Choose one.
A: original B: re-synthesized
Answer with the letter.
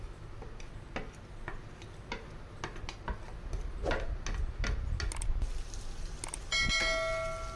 A